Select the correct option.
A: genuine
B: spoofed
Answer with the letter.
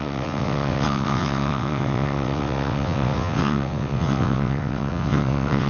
B